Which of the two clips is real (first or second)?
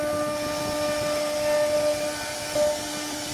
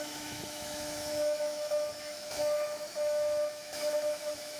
first